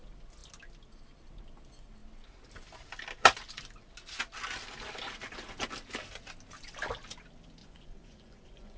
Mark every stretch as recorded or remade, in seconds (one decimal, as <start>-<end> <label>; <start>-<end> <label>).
0.0-7.6 recorded; 7.6-8.8 remade

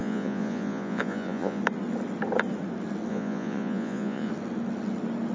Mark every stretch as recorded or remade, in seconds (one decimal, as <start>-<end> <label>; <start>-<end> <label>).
0.0-1.6 remade; 1.6-3.1 recorded; 3.1-4.3 remade; 4.3-5.3 recorded

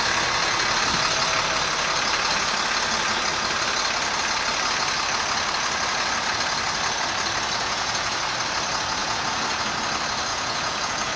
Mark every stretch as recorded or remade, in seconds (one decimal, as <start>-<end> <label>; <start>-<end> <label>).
0.0-7.6 recorded; 7.6-8.1 remade; 8.1-9.0 recorded; 9.0-9.6 remade; 9.6-10.3 recorded; 10.3-11.2 remade

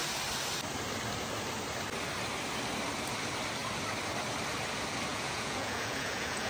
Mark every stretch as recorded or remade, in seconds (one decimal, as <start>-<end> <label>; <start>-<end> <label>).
0.0-5.1 recorded; 5.1-6.5 remade

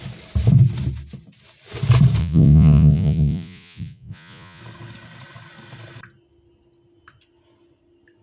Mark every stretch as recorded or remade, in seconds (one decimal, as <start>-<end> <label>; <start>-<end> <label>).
0.0-2.2 recorded; 2.2-4.6 remade; 4.6-8.2 recorded